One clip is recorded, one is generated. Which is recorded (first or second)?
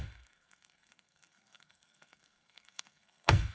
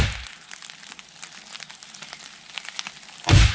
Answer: second